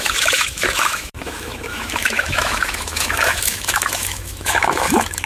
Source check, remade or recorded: remade